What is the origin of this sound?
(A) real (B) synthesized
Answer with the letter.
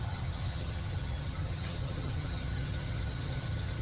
B